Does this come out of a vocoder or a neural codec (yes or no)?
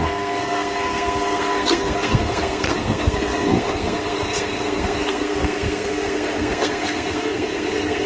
yes